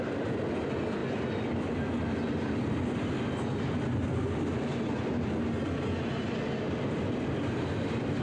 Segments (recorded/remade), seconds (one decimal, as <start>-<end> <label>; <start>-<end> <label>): 0.0-8.2 recorded